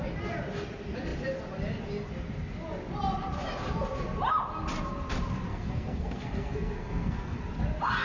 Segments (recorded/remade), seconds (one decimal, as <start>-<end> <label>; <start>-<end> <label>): 0.0-5.5 recorded; 5.5-7.4 remade; 7.4-8.0 recorded